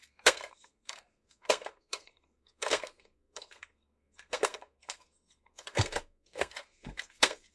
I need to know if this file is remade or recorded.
remade